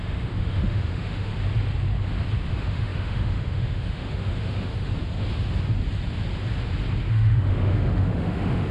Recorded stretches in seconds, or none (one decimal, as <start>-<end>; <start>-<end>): 1.3-2.5; 4.9-7.1